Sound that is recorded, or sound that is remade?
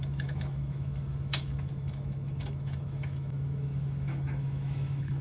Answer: remade